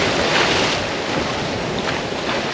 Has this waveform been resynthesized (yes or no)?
no